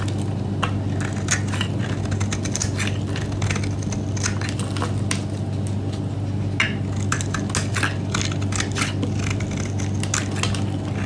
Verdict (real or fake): real